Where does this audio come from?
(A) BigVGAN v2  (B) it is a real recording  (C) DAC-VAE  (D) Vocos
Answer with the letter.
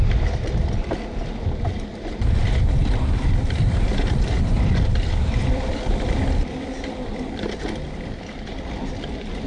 A